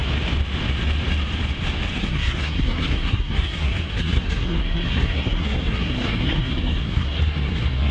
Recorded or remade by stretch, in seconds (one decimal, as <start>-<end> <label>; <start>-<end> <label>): 0.0-2.0 recorded; 2.0-7.9 remade